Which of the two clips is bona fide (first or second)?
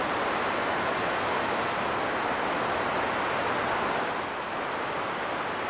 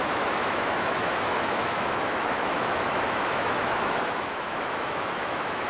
first